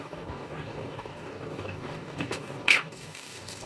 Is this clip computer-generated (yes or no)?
yes